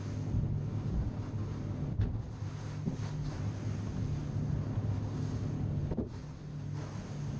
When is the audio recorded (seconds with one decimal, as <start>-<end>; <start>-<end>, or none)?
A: 0.0-7.4